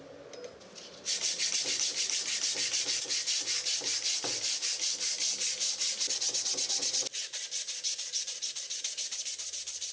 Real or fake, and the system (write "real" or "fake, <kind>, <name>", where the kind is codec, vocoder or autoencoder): real